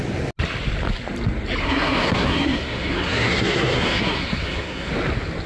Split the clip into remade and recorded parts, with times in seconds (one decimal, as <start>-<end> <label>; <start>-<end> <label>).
0.0-1.6 recorded; 1.6-4.9 remade; 4.9-5.5 recorded